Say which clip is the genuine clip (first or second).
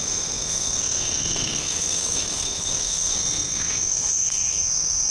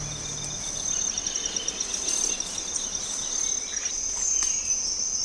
second